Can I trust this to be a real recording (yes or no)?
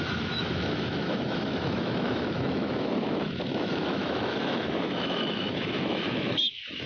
no